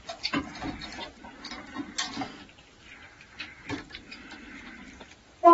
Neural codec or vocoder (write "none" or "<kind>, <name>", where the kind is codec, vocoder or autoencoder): none